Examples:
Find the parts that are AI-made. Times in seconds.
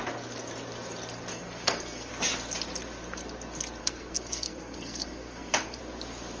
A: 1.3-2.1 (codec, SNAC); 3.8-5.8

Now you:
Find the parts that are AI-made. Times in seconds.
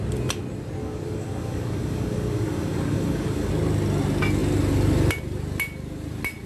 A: 0.8-3.5 (codec, DAC)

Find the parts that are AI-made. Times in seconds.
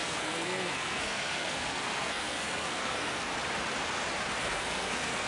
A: 0.0-3.3 (codec, SNAC); 4.4-5.3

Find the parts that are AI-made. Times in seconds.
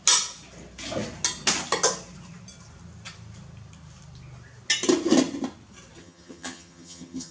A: 6.0-7.3 (vocoder, HiFi-GAN)